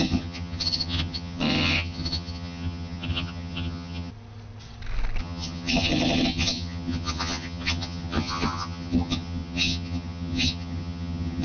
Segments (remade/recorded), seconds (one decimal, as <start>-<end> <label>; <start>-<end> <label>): 0.0-4.1 remade; 4.1-5.2 recorded; 5.2-11.4 remade